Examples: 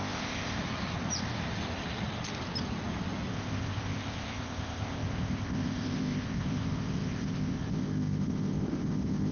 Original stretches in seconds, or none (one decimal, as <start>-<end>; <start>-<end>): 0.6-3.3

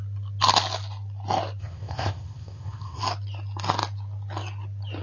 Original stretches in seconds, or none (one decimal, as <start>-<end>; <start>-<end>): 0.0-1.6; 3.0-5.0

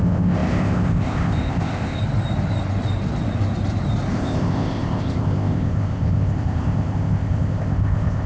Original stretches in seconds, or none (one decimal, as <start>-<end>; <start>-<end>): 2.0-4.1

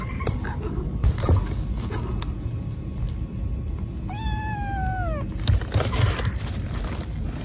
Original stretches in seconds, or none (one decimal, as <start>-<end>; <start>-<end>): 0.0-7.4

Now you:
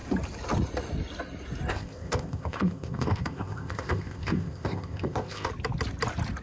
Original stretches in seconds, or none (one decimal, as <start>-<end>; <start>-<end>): 0.0-1.7; 5.5-6.4